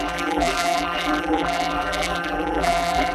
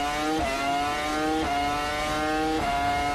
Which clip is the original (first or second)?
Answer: second